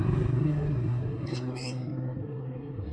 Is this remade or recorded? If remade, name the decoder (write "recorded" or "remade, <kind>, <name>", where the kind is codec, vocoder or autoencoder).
remade, codec, SNAC